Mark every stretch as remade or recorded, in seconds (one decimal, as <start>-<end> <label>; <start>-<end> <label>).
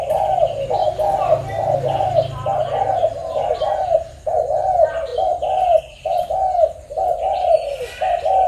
0.0-8.5 recorded